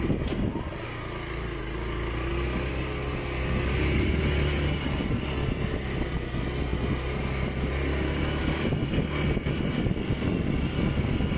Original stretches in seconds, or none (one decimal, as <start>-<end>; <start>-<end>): 0.0-11.4